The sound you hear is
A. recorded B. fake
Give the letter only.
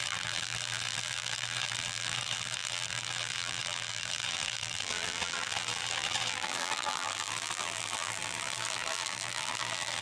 B